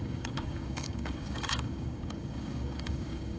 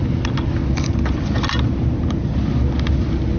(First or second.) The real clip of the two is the second